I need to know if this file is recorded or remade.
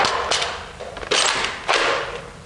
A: recorded